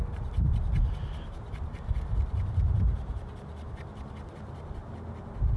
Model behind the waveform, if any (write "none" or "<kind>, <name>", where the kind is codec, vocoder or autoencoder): none